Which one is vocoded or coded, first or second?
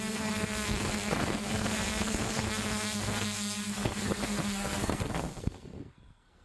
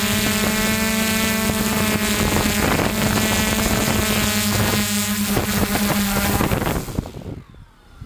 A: first